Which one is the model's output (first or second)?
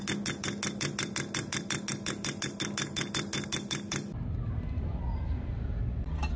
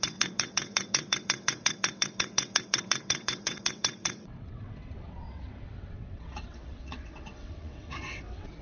second